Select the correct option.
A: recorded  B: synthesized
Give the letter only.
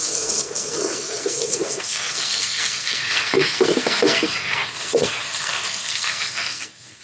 B